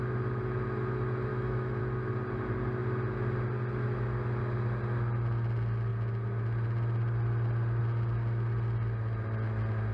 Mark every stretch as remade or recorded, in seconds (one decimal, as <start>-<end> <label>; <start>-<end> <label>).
0.0-1.3 recorded; 1.3-1.8 remade; 1.8-9.9 recorded